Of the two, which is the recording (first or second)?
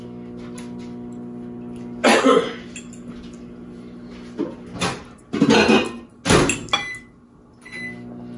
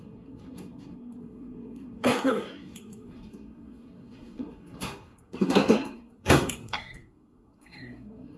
first